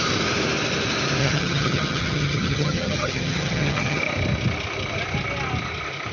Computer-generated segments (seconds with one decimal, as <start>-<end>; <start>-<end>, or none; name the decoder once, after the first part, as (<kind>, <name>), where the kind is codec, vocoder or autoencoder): 1.2-4.0 (vocoder, HiFi-GAN)